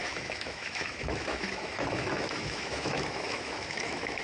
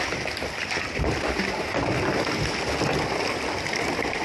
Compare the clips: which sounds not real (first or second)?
first